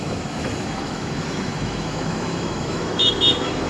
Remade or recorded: remade